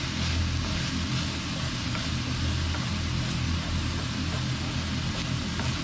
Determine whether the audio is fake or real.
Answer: real